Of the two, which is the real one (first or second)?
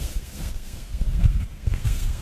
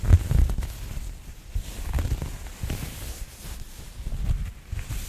second